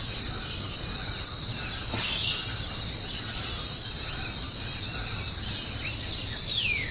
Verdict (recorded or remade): recorded